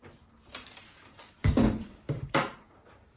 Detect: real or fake fake